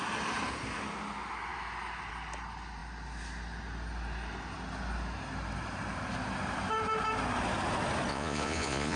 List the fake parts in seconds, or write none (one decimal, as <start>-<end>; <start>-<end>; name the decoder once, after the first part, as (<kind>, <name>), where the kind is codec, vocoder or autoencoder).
8.1-9.0 (vocoder, Vocos)